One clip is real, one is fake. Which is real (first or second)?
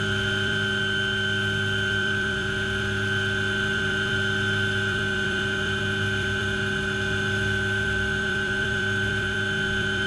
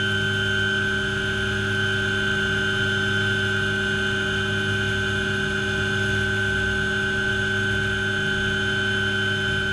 second